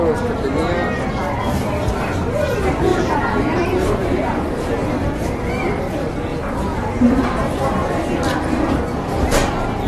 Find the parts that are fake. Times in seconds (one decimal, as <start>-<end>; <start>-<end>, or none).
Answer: 2.9-4.7